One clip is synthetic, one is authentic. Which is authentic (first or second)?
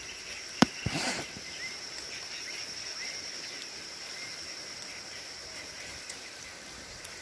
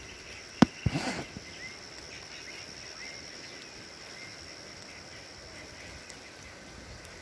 second